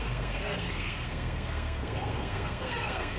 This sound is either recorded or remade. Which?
remade